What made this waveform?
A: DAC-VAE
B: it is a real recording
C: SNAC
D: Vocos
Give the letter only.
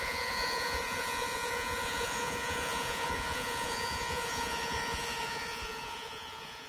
D